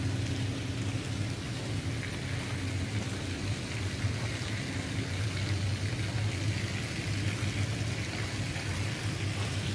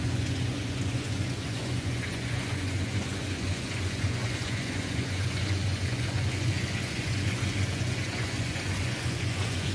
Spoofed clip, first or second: second